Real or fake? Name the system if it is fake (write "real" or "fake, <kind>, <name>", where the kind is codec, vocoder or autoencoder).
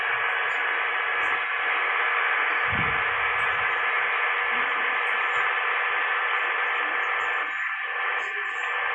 real